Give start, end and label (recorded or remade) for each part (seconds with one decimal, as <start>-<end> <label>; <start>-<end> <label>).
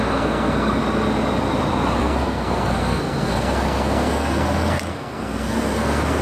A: 0.0-0.8 remade; 0.8-2.0 recorded; 2.0-6.2 remade